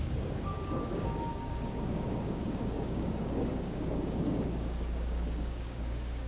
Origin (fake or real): fake